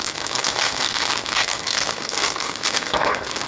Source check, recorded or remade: remade